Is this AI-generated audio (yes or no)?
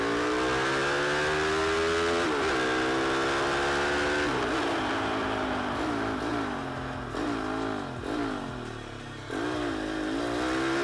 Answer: no